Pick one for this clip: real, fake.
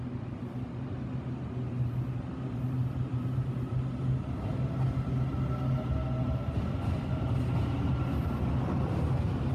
real